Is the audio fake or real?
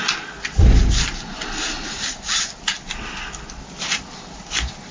real